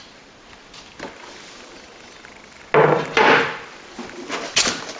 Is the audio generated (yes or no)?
no